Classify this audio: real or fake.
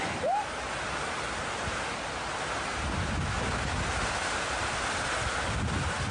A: real